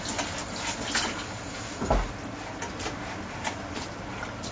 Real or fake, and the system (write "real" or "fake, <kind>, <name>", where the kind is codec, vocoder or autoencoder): real